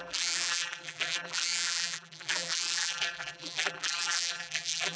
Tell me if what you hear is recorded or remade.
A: remade